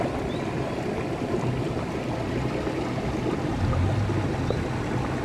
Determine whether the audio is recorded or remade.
recorded